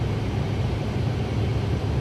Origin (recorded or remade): recorded